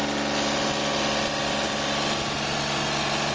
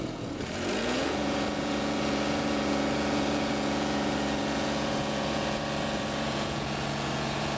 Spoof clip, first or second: second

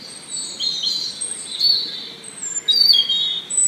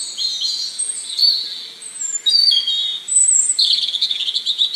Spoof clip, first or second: second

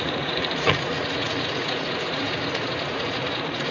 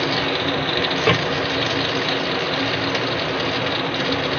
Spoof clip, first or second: first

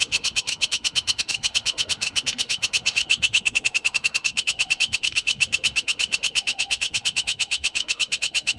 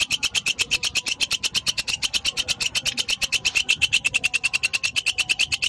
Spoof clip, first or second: first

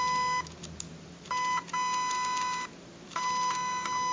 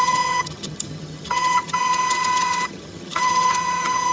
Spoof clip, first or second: second